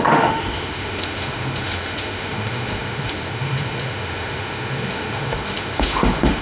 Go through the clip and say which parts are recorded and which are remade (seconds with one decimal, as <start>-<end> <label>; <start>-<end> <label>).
0.0-6.4 remade